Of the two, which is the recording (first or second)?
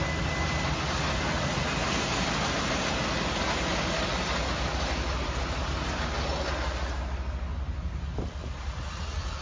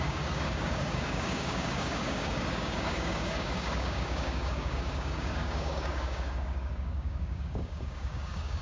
first